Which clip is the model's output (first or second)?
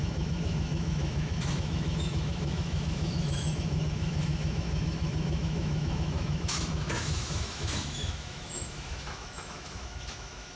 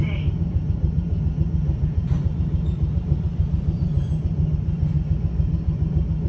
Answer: first